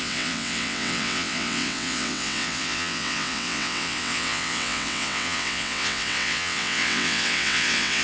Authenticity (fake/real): fake